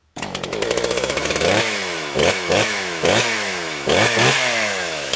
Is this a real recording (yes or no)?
no